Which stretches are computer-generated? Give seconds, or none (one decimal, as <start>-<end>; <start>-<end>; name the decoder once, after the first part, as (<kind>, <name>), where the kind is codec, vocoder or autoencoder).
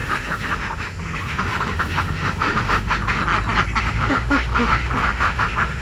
0.0-3.2 (autoencoder, DAC-VAE); 3.8-5.8